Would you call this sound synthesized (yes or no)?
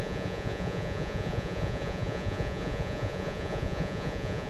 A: yes